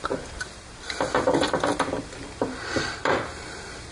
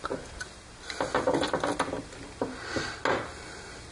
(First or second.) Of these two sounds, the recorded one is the second